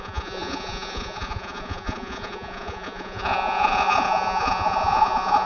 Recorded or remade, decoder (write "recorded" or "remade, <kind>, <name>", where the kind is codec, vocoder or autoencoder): remade, vocoder, Vocos